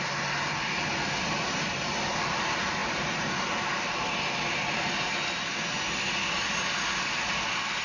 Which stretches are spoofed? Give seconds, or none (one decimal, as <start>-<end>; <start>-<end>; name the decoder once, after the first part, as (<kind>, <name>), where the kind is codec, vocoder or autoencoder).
none